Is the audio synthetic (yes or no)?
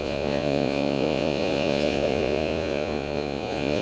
yes